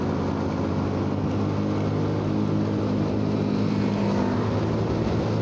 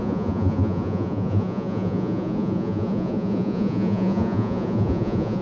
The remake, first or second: second